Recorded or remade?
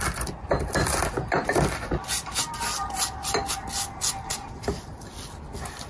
recorded